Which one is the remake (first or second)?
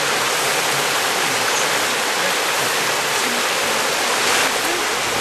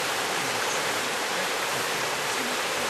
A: second